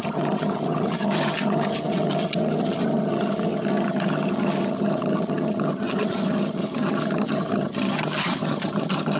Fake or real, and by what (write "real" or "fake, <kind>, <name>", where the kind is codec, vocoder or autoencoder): fake, vocoder, HiFi-GAN